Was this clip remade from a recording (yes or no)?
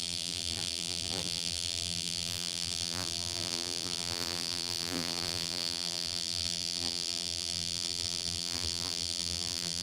yes